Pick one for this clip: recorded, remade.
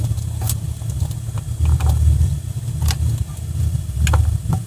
recorded